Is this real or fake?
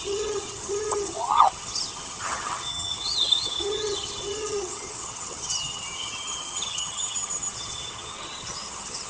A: fake